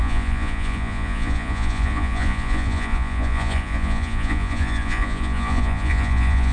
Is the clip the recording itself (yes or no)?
no